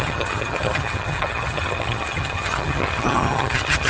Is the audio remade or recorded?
remade